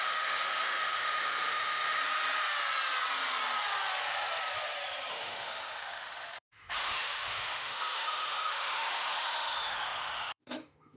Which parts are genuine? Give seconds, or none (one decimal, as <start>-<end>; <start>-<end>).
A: 2.0-5.1